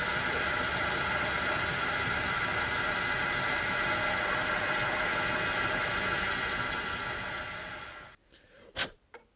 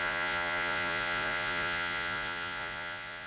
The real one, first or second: first